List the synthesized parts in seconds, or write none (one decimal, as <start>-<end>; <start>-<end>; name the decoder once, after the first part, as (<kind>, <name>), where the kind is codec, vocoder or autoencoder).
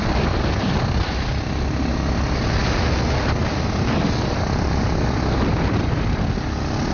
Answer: none